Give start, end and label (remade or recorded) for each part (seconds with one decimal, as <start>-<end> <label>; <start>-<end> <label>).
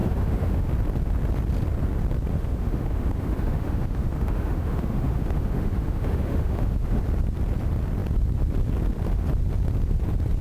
0.0-0.7 remade; 0.7-2.3 recorded; 2.3-7.0 remade; 7.0-10.4 recorded